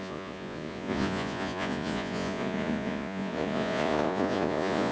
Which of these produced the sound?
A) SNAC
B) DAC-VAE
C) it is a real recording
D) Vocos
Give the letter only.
D